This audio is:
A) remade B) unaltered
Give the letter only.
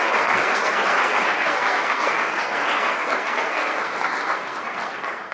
A